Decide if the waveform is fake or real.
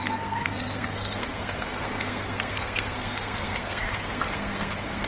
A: fake